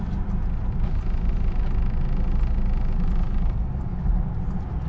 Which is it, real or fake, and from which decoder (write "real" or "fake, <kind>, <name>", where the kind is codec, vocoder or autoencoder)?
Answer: real